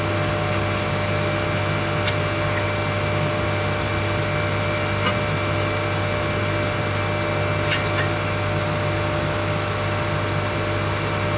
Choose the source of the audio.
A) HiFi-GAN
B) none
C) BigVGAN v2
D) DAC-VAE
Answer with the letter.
B